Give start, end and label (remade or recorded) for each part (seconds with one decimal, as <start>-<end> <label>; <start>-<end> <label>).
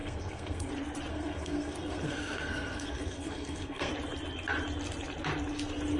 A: 0.0-0.7 remade; 0.7-1.1 recorded; 1.1-3.9 remade; 3.9-6.0 recorded